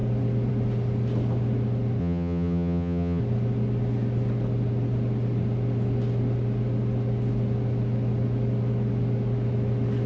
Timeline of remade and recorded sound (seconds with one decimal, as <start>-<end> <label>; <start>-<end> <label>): 0.0-2.0 recorded; 2.0-3.2 remade; 3.2-10.1 recorded